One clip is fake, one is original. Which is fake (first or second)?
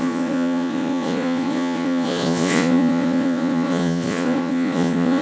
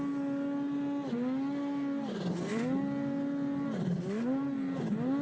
first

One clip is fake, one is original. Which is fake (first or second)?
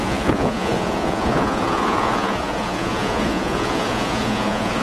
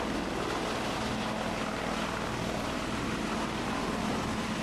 first